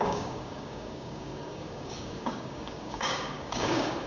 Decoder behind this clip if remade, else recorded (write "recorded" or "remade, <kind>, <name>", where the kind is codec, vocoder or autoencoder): remade, codec, DAC